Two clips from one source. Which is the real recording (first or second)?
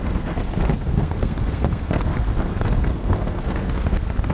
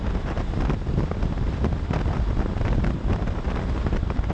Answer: second